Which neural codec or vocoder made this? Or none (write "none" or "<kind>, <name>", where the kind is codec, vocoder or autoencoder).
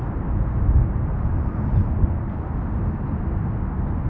none